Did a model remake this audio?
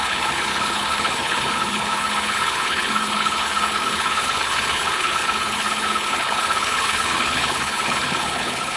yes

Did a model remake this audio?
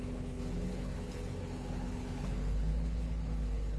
yes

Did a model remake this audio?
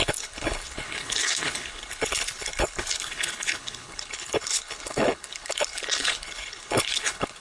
yes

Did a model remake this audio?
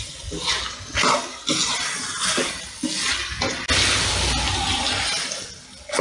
no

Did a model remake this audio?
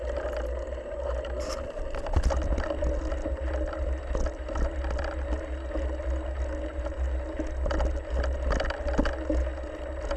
no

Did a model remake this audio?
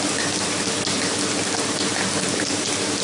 no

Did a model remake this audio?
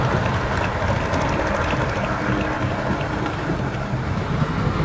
no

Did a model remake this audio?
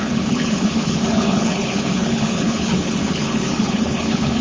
yes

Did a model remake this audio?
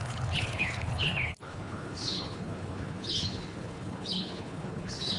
yes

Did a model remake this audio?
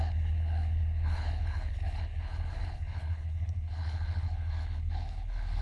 yes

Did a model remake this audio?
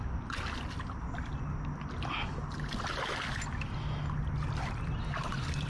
no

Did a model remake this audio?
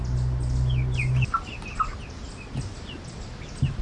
no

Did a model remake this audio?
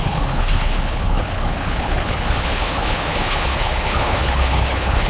yes